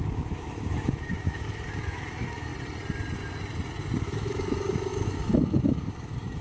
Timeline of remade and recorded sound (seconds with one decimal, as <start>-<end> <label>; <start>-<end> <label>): 0.0-2.5 remade; 2.5-4.0 recorded; 4.0-6.4 remade